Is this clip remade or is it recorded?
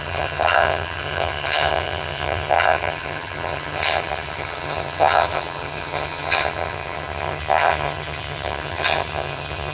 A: remade